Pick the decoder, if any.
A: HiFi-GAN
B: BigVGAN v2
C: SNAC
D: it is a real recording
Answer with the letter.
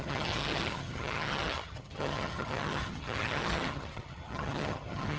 A